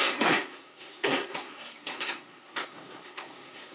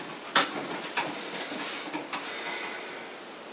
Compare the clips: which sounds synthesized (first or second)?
first